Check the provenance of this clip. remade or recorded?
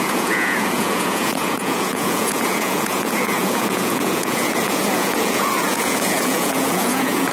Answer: remade